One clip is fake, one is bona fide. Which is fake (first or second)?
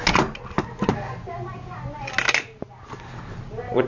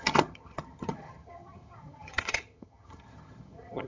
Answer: second